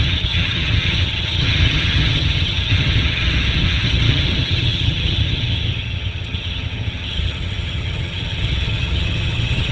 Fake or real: fake